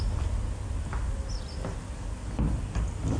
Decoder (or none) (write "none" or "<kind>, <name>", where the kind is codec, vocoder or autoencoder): none